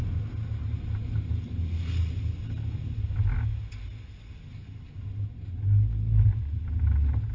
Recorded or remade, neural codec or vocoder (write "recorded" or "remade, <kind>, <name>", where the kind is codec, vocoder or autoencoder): recorded